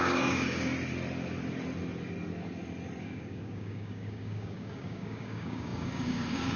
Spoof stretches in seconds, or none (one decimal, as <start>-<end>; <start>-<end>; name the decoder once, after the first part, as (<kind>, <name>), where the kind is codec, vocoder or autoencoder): 0.0-0.7 (codec, DAC); 3.0-6.6